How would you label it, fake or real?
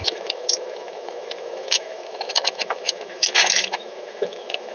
fake